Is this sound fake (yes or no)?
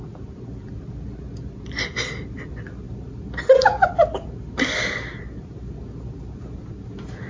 no